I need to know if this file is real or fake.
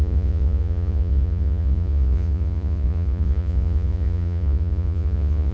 fake